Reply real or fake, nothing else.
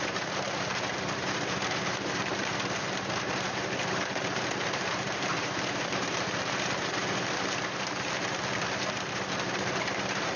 fake